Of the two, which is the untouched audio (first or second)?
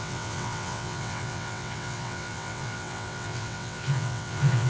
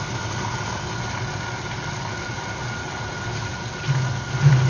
second